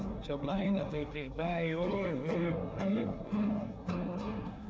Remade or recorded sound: remade